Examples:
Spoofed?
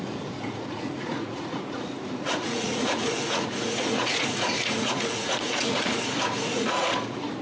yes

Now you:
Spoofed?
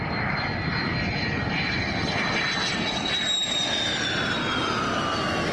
no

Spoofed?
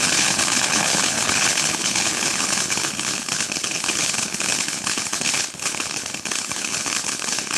yes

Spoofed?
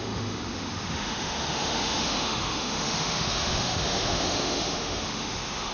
yes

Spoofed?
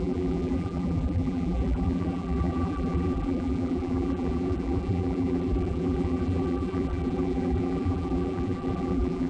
yes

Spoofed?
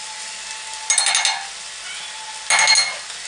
no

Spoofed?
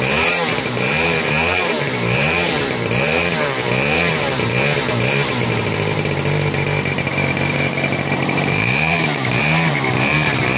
yes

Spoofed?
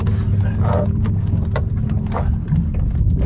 no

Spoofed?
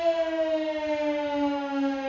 no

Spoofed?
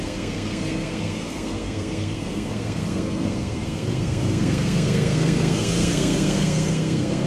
yes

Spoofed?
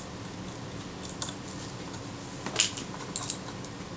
no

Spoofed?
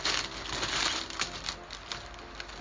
no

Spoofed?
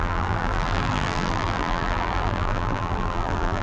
yes